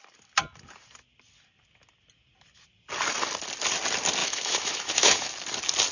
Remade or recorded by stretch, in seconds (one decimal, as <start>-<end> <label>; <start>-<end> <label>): 0.0-4.2 recorded; 4.2-5.3 remade; 5.3-5.9 recorded